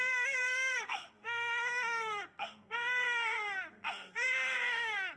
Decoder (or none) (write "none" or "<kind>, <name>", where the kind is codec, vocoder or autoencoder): codec, SNAC